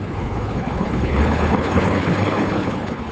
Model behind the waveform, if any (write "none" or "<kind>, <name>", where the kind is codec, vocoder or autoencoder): codec, HILCodec